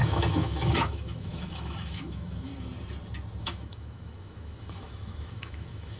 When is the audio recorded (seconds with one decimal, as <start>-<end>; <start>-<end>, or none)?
2.5-3.4